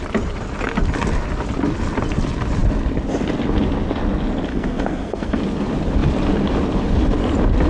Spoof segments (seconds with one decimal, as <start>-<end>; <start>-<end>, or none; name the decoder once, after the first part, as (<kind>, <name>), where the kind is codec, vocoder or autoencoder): 4.5-5.4 (codec, SNAC)